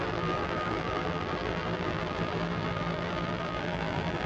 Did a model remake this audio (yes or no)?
yes